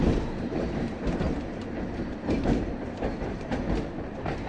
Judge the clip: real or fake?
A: fake